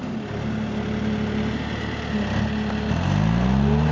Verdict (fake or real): real